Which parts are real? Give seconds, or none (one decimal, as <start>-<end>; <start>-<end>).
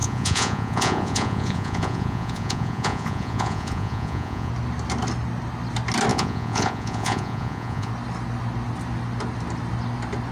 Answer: 4.5-6.1; 7.9-10.3